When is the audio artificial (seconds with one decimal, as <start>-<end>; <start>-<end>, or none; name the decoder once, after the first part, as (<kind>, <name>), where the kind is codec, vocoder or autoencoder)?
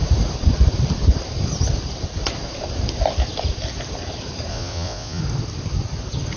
4.5-5.2 (vocoder, Vocos)